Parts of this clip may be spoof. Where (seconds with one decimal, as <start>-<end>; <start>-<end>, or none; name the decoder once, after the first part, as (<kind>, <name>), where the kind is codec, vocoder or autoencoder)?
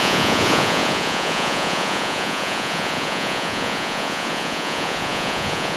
0.0-5.8 (vocoder, Vocos)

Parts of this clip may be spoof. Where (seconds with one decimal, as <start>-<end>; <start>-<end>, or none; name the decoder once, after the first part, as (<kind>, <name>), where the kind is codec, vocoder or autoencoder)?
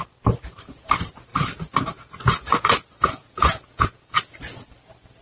1.3-4.4 (vocoder, Vocos)